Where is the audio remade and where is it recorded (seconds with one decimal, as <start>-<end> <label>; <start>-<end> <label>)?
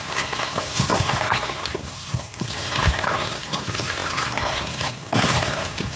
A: 0.0-6.0 remade